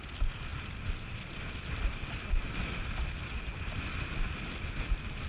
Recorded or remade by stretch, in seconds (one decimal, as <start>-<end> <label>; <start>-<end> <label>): 0.0-0.5 recorded; 0.5-3.7 remade; 3.7-5.3 recorded